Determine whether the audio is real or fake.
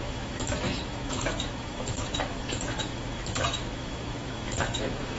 fake